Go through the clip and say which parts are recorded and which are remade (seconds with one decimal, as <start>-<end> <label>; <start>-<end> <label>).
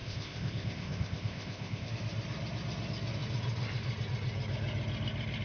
0.0-1.9 remade; 1.9-5.4 recorded